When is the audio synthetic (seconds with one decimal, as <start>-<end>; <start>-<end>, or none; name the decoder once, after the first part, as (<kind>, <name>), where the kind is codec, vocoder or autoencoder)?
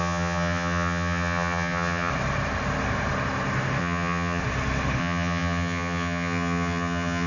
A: 0.0-2.1 (vocoder, HiFi-GAN); 3.8-4.4; 5.0-7.3